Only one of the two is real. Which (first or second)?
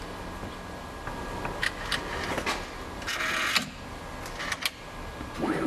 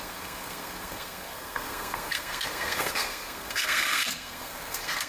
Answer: first